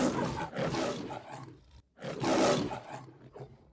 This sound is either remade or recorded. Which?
recorded